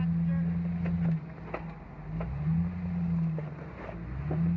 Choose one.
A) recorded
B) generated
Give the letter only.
A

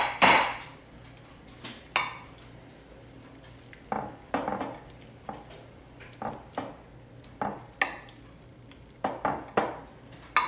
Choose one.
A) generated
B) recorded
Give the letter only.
B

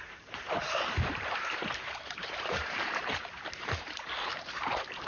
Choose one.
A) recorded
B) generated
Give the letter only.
B